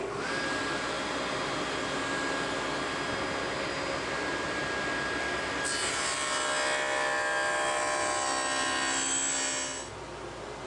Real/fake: real